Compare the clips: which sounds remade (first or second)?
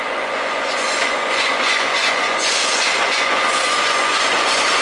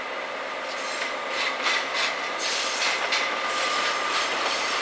first